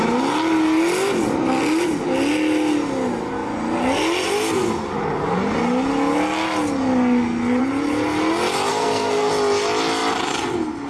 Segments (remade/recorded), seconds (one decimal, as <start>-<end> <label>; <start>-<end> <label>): 0.0-8.7 recorded; 8.7-9.3 remade; 9.3-10.9 recorded